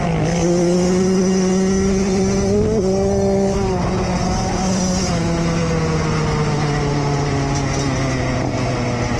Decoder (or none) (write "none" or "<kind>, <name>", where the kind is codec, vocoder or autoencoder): none